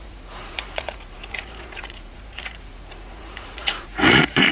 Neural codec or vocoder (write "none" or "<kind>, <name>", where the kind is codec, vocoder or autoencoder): vocoder, Vocos